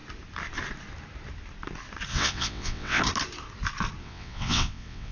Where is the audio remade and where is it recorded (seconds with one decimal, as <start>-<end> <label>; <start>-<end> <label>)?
0.0-2.1 recorded; 2.1-3.0 remade; 3.0-4.0 recorded; 4.0-5.1 remade